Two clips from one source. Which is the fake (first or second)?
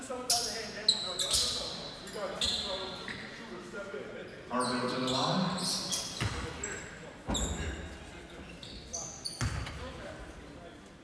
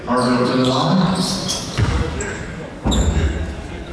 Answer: second